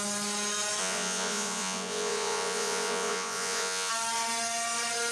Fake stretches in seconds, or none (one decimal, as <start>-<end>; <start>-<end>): 0.8-3.9